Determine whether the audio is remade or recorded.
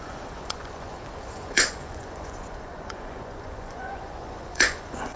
remade